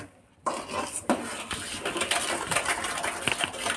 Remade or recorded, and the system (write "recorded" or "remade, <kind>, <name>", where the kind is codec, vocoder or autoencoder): recorded